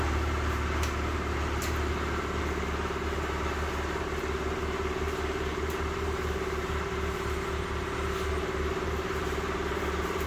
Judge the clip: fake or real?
fake